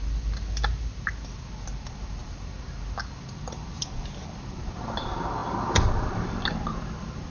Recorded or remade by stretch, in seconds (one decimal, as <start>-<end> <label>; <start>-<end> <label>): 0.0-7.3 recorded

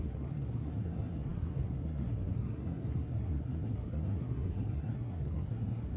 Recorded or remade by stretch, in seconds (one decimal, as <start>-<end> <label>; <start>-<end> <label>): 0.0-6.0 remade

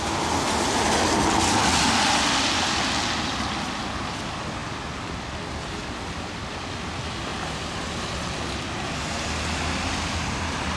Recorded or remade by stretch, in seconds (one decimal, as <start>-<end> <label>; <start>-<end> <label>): 0.0-10.8 recorded

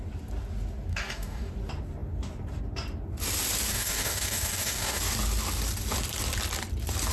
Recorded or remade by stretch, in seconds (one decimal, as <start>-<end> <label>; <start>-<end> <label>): 0.0-0.9 recorded; 0.9-1.5 remade; 1.5-3.7 recorded; 3.7-5.0 remade; 5.0-7.1 recorded